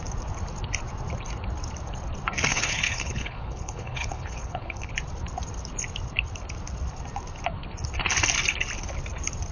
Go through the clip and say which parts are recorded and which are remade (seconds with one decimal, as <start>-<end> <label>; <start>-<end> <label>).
0.0-2.5 recorded; 2.5-4.9 remade; 4.9-9.5 recorded